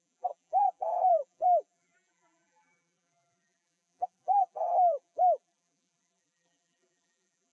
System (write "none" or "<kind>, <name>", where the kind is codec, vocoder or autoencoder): vocoder, BigVGAN v2